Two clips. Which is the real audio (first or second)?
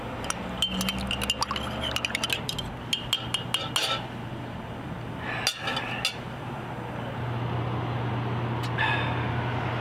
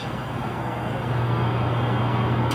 first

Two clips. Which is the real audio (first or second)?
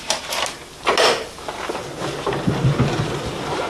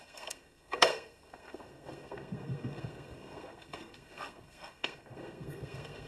first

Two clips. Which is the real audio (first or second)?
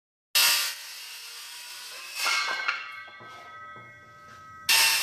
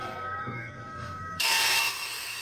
first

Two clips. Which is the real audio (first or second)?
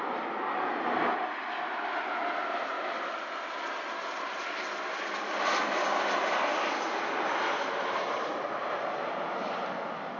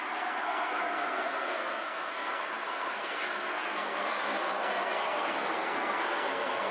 first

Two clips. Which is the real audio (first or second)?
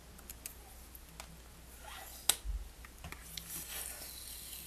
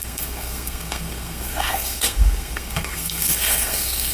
first